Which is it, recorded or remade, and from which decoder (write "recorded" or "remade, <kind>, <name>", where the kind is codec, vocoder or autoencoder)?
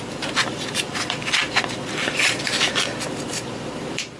remade, vocoder, BigVGAN v2